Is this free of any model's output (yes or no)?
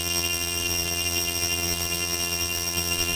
no